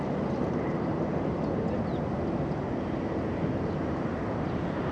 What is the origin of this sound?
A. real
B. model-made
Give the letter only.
A